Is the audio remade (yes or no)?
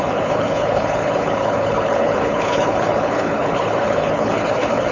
yes